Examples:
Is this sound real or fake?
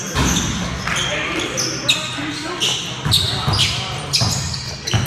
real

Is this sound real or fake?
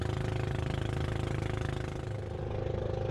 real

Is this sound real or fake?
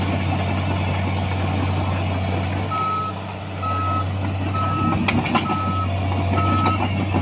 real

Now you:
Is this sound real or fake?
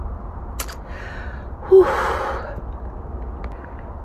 real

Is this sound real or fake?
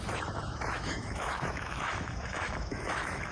fake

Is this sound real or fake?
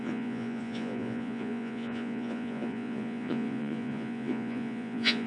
fake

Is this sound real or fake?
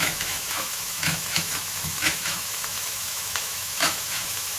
fake